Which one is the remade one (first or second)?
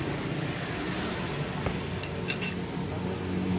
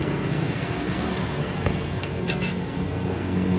second